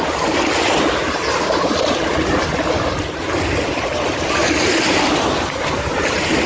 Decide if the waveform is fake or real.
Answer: real